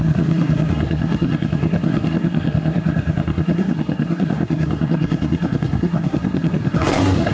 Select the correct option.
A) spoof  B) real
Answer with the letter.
A